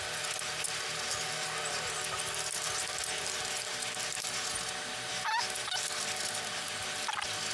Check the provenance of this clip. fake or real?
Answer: real